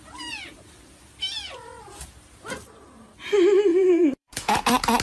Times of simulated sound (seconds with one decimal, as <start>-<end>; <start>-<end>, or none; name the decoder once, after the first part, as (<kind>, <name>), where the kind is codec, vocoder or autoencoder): 3.7-4.6 (vocoder, Vocos)